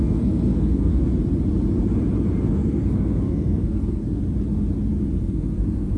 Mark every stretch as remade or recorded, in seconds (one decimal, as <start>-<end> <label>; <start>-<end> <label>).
0.0-1.1 remade; 1.1-2.4 recorded; 2.4-4.2 remade; 4.2-5.2 recorded; 5.2-6.0 remade